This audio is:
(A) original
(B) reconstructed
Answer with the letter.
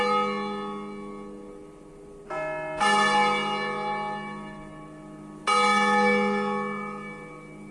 A